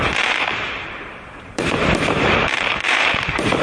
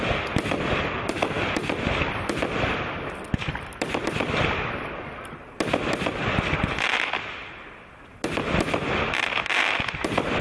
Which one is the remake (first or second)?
first